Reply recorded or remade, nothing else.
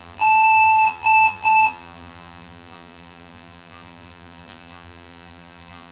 remade